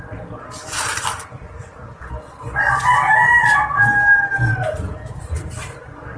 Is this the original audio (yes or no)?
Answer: yes